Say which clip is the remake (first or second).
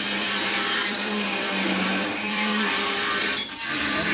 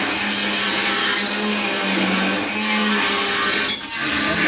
first